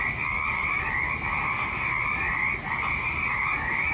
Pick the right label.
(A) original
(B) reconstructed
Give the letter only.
A